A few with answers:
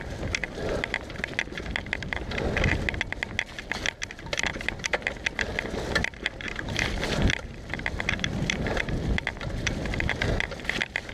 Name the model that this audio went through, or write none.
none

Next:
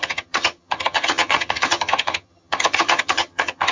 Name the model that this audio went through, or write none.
vocoder, HiFi-GAN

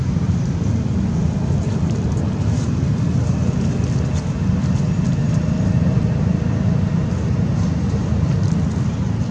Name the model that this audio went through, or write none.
none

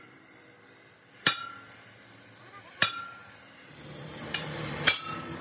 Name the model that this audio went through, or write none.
vocoder, BigVGAN v2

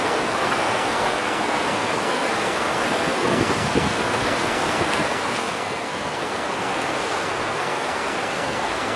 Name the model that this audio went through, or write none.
codec, SNAC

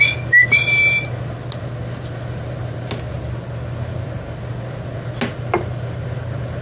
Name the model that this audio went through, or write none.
none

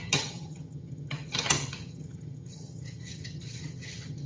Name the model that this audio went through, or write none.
vocoder, HiFi-GAN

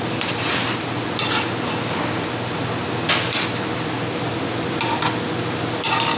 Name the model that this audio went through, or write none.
none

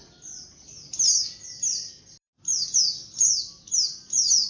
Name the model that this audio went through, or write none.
none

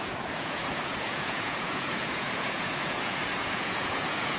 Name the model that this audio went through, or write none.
vocoder, Vocos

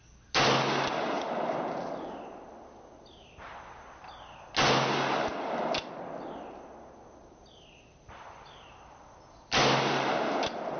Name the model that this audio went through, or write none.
none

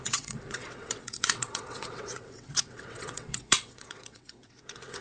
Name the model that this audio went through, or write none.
vocoder, WaveNeXt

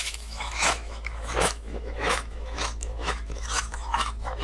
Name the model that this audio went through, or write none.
autoencoder, DAC-VAE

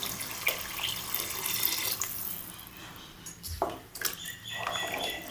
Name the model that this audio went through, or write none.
none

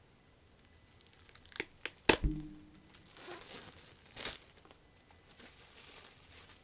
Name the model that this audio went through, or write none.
none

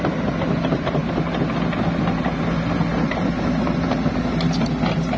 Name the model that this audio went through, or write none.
none